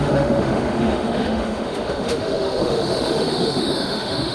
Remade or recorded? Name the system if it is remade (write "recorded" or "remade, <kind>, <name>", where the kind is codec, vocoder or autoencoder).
remade, autoencoder, DAC-VAE